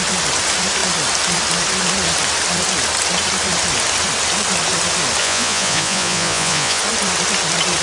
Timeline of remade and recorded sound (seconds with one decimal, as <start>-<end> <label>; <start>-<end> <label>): 0.0-5.2 recorded; 5.2-6.8 remade; 6.8-7.8 recorded